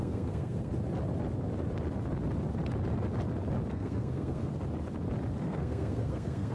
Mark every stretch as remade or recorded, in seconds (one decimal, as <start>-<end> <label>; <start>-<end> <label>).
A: 0.0-0.7 remade; 0.7-3.7 recorded; 3.7-4.5 remade; 4.5-5.4 recorded; 5.4-6.5 remade